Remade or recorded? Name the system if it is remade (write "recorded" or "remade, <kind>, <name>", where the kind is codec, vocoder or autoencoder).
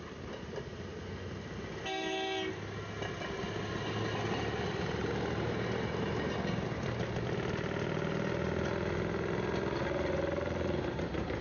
recorded